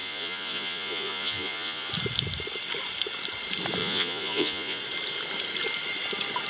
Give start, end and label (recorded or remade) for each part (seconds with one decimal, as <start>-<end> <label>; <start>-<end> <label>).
0.0-1.9 remade; 1.9-3.8 recorded; 3.8-4.8 remade; 4.8-6.5 recorded